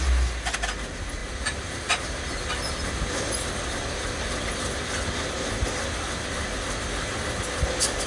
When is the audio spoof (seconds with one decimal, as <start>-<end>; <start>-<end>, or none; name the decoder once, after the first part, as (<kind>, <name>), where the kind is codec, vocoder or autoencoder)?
1.2-2.3 (vocoder, BigVGAN v2)